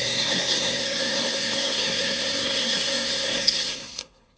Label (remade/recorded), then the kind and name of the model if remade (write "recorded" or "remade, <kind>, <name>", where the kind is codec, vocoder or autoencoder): remade, codec, SNAC